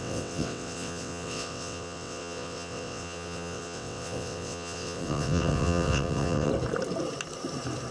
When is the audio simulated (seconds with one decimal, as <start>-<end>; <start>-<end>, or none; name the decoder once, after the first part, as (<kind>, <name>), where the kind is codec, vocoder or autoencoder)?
0.0-6.5 (vocoder, WaveNeXt)